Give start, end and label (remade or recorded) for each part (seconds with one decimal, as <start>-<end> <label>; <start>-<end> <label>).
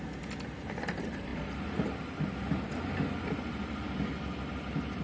0.0-5.0 recorded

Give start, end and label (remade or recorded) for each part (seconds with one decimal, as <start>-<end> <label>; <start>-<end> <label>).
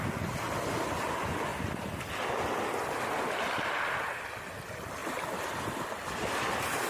0.0-6.9 recorded